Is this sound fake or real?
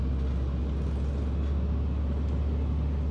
real